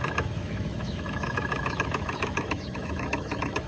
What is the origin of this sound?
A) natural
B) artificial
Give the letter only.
B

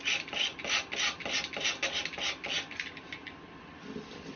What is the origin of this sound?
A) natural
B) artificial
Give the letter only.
A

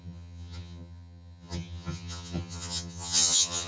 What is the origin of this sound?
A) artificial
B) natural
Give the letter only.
A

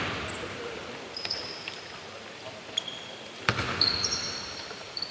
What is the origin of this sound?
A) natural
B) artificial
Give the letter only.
B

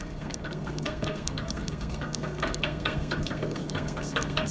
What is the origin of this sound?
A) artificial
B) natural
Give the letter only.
A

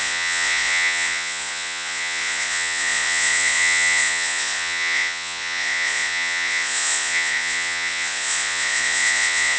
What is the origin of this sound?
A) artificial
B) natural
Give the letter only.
A